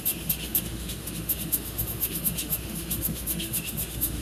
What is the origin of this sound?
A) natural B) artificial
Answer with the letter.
B